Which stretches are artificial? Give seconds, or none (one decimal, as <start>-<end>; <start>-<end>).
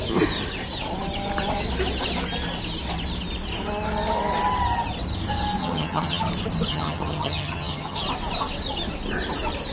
5.6-6.2; 6.7-8.0